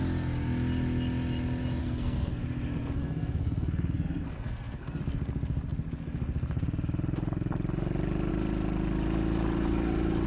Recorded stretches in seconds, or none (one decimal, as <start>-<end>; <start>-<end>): 0.0-1.8; 2.4-3.0; 5.0-10.3

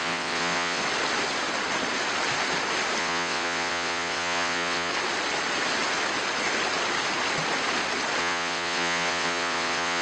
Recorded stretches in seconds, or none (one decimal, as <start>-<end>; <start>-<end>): 0.8-3.0; 4.9-8.2

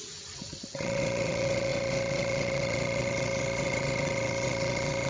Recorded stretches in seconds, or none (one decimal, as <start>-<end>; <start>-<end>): none

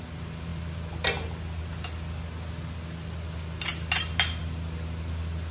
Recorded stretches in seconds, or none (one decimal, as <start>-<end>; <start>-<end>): 0.0-5.5

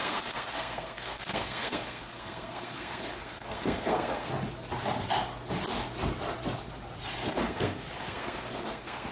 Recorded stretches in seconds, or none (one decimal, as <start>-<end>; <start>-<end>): 4.3-7.3

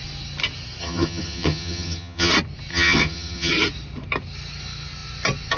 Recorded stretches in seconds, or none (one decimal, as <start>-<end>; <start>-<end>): 0.0-0.8; 2.3-2.7; 3.5-5.6

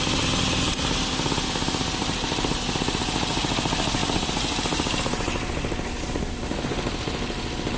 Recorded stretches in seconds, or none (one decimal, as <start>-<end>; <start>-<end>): 0.0-7.8